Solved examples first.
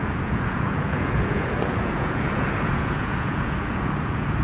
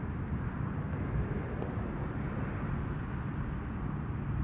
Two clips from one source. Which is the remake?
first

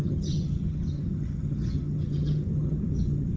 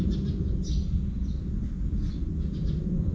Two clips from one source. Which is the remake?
first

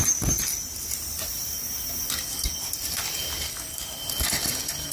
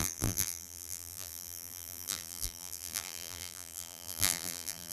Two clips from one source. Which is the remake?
second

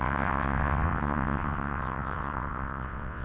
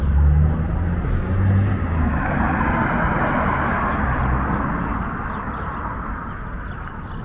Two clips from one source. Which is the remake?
first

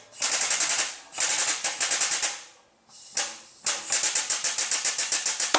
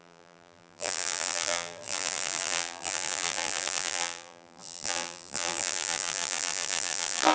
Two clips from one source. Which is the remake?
second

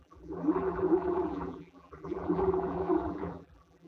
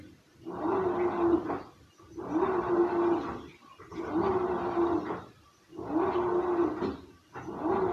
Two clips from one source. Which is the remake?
first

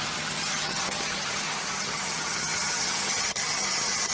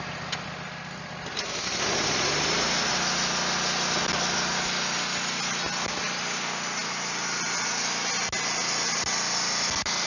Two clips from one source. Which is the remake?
first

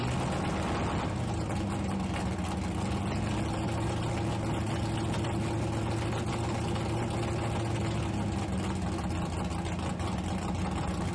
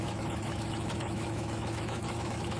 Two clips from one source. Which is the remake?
second